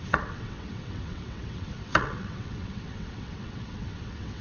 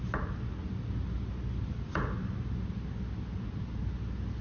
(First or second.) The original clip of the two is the second